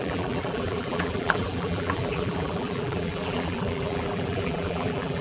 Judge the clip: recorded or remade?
remade